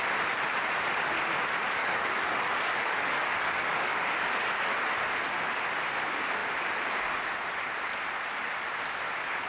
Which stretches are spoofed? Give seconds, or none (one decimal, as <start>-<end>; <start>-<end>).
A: 1.8-4.7